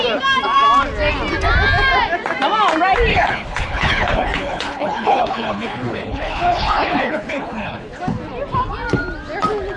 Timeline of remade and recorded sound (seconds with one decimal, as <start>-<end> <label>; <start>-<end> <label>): 0.0-3.1 recorded; 3.1-8.0 remade; 8.0-9.8 recorded